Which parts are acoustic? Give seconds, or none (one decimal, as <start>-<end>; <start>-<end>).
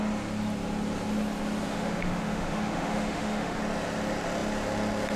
0.0-1.7; 3.6-5.2